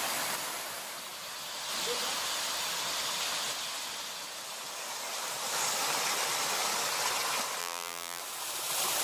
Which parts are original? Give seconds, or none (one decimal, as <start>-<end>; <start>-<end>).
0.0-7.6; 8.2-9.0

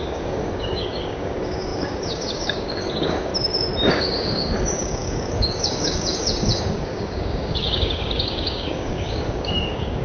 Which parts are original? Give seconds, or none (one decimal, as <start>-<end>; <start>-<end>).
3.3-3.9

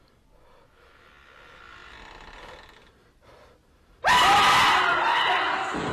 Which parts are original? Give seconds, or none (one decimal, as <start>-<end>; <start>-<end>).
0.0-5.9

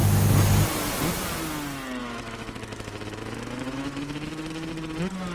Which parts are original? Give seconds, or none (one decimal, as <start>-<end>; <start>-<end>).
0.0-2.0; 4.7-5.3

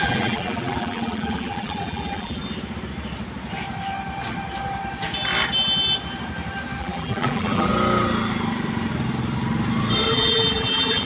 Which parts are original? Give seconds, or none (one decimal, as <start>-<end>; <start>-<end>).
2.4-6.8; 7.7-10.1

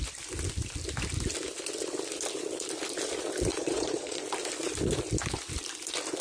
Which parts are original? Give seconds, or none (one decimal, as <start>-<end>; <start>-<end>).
0.0-3.5; 4.2-6.2